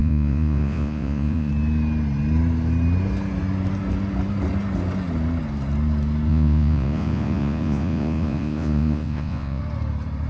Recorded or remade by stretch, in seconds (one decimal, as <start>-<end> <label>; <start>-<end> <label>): 0.0-1.5 remade; 1.5-6.3 recorded; 6.3-9.6 remade; 9.6-10.3 recorded